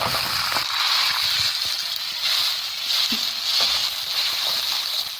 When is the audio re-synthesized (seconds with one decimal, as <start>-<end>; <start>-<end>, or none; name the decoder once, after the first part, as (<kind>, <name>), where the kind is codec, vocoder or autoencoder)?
1.8-2.4 (vocoder, BigVGAN v2); 3.8-4.8

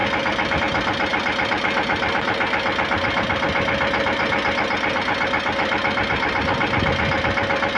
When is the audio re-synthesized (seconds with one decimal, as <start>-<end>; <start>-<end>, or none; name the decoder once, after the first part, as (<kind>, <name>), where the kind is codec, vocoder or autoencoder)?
none

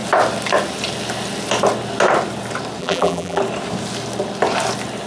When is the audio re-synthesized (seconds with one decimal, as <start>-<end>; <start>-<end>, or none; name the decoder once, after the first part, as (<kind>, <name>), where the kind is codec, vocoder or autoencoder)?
2.8-3.4 (vocoder, BigVGAN v2)

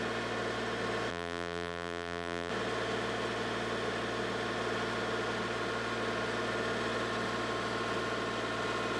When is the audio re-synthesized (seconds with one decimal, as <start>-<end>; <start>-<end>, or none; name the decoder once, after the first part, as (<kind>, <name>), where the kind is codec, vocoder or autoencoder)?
1.1-2.5 (vocoder, BigVGAN v2)

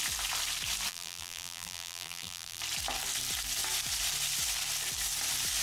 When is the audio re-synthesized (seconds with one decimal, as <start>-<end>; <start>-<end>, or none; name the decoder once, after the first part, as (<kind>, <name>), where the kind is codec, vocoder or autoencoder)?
0.9-2.6 (vocoder, BigVGAN v2)

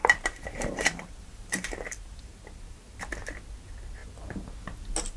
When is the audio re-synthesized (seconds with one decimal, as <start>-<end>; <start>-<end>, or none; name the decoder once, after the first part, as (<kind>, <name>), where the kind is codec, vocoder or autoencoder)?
0.0-2.3 (vocoder, BigVGAN v2)

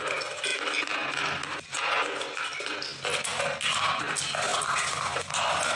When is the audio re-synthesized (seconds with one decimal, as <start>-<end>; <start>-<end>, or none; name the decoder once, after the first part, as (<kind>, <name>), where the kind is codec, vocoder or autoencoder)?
4.5-5.3 (vocoder, BigVGAN v2)